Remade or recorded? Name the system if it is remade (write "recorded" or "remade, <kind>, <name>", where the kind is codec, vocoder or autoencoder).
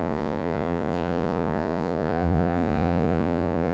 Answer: remade, vocoder, Vocos